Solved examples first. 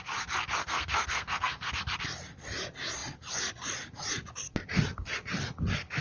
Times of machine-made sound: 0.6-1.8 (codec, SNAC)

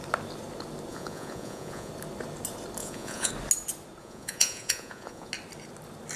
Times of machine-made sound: 0.9-1.9 (vocoder, Vocos); 2.8-3.3; 4.0-5.3

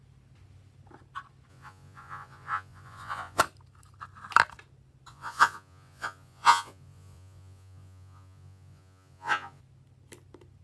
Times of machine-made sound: 1.5-3.4 (vocoder, Vocos); 5.1-9.6

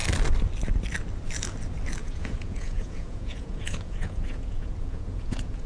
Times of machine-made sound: 2.0-5.7 (vocoder, Vocos)

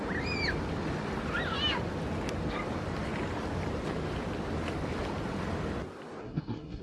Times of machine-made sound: 6.2-6.8 (codec, SNAC)